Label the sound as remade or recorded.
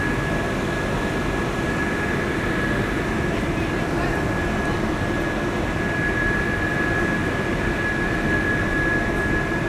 recorded